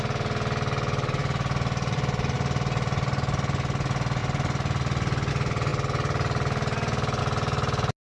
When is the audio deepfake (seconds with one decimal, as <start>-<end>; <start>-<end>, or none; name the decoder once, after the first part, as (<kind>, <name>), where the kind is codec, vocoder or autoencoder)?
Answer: none